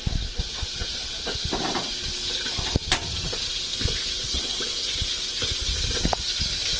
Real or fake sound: real